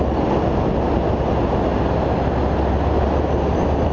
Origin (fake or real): real